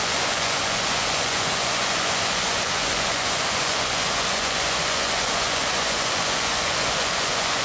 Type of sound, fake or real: fake